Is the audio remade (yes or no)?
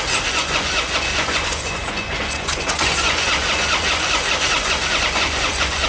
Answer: yes